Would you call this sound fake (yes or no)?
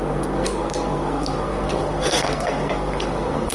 yes